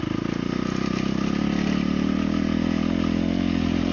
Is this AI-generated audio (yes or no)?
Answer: no